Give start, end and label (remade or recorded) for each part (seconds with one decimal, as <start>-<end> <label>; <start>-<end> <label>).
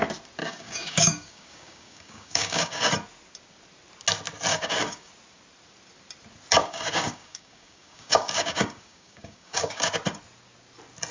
0.0-0.4 recorded; 0.4-2.9 remade; 2.9-4.5 recorded; 4.5-5.1 remade; 5.1-6.6 recorded; 6.6-9.9 remade; 9.9-11.1 recorded